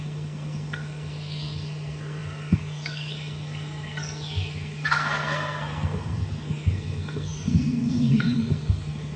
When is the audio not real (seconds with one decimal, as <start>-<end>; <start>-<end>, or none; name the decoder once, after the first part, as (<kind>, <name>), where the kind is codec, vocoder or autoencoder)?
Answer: 0.0-9.2 (codec, SNAC)